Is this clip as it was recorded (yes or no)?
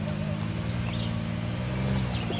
yes